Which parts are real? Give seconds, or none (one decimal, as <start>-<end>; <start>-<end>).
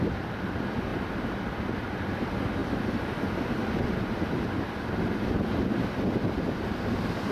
0.0-7.3